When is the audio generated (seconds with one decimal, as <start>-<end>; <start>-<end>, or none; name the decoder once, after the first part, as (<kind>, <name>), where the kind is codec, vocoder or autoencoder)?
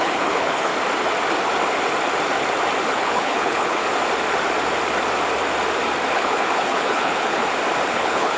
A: 0.0-0.7 (codec, HILCodec); 2.8-3.8; 6.1-7.4; 7.9-8.4